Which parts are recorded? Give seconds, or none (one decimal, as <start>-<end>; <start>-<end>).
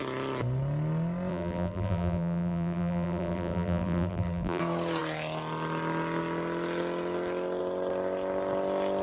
0.0-1.3; 4.6-9.0